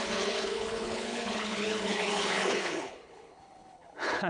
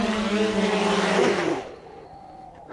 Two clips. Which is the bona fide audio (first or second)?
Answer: second